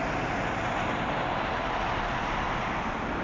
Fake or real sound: real